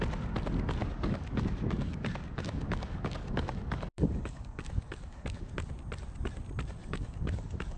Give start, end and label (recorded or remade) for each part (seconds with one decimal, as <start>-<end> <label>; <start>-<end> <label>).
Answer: 0.0-0.8 recorded; 0.8-5.5 remade; 5.5-6.8 recorded; 6.8-7.8 remade